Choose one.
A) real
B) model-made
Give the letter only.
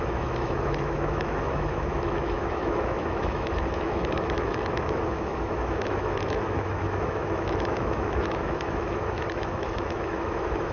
B